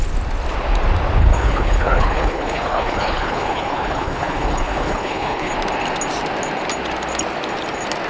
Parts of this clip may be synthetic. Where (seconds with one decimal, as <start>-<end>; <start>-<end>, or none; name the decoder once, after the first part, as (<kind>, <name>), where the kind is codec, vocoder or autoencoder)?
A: 1.2-5.5 (codec, HILCodec)